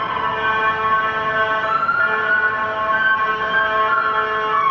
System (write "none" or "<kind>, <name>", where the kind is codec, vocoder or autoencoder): none